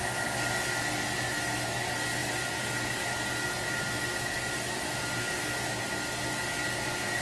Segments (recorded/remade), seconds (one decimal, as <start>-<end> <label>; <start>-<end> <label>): 0.0-7.2 recorded